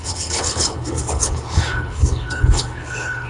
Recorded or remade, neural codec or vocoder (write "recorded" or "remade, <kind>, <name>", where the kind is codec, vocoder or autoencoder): remade, codec, HILCodec